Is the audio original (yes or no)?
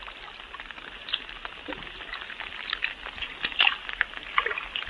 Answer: yes